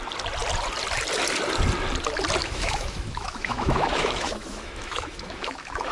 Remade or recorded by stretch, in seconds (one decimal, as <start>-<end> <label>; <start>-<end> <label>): 0.0-2.4 recorded; 2.4-5.9 remade